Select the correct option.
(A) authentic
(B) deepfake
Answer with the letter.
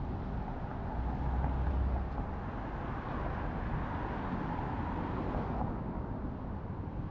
A